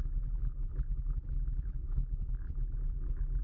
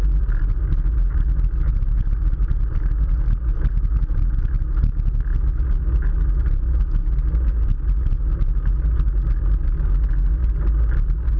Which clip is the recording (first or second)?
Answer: second